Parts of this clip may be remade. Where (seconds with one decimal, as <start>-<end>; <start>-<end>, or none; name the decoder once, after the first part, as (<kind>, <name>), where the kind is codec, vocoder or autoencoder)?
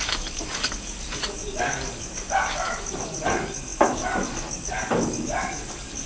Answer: 0.0-6.1 (codec, DAC)